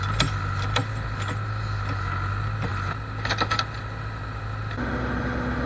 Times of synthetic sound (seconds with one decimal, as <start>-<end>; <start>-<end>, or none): none